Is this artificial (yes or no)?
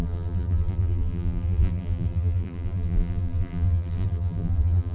yes